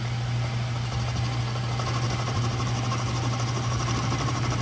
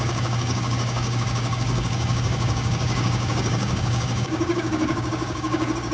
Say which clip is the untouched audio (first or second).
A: first